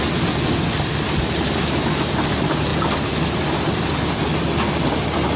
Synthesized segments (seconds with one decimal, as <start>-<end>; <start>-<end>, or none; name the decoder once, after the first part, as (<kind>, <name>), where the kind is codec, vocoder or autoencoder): none